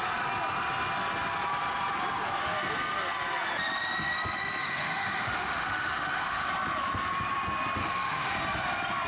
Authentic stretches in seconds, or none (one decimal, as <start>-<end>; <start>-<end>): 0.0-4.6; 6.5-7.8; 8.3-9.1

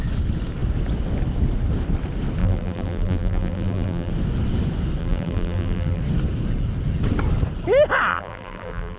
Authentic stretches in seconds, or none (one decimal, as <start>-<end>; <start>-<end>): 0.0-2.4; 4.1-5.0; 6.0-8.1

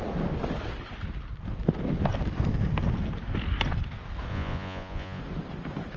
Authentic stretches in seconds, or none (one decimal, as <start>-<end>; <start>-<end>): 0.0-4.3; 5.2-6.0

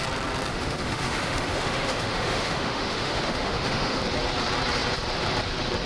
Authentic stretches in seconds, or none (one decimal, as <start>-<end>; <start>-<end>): 0.0-0.5; 4.0-5.9